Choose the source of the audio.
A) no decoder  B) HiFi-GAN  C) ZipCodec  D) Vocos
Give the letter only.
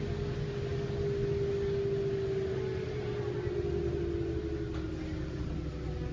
A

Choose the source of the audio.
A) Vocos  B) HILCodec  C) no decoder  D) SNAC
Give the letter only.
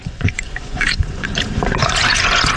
A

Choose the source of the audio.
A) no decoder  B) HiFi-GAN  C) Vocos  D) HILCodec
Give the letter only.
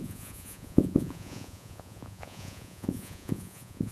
C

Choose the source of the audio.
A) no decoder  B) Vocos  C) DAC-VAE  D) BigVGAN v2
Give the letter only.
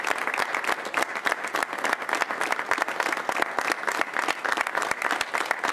A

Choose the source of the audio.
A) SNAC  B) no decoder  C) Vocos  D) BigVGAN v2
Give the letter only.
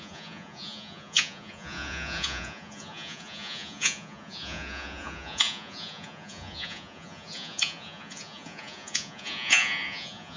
C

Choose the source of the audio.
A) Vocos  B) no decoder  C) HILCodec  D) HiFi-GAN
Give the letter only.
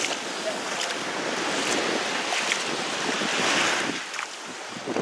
B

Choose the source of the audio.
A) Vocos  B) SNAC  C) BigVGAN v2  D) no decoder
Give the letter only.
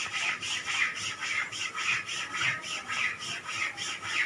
D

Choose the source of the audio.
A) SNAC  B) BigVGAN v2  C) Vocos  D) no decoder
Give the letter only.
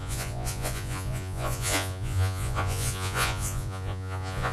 C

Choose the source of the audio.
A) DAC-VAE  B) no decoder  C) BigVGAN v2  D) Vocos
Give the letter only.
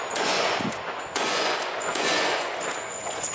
D